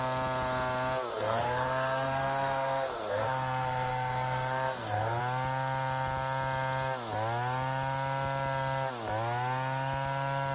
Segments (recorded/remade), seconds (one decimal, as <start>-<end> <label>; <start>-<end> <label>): 0.0-1.1 recorded; 1.1-5.2 remade; 5.2-10.5 recorded